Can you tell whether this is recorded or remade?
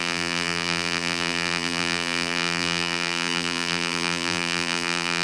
remade